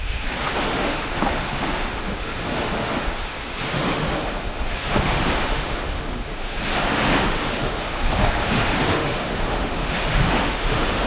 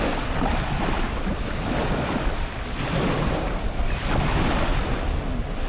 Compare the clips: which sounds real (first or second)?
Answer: second